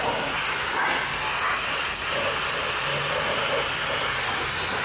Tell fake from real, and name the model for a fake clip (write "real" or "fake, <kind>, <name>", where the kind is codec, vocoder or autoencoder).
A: real